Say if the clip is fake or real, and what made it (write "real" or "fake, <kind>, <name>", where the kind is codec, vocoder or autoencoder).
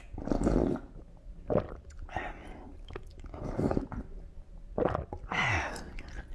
real